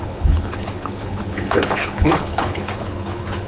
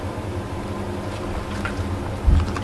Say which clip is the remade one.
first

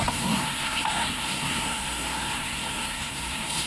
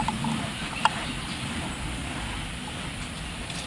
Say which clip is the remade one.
first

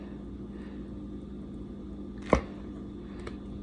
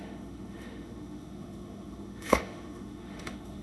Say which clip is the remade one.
second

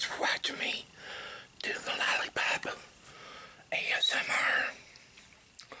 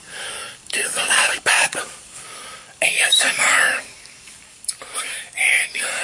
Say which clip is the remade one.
second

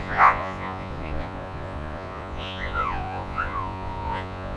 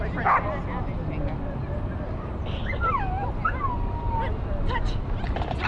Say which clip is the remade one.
first